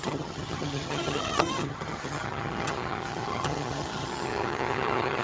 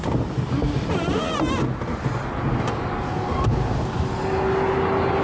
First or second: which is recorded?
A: second